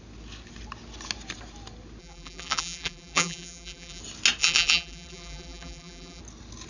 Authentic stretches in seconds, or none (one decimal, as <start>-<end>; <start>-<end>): 0.0-2.0; 4.0-4.4; 6.2-6.7